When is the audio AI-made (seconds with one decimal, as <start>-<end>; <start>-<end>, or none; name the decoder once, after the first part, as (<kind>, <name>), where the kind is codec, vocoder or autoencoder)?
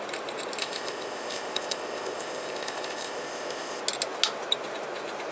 0.6-3.8 (codec, ZipCodec)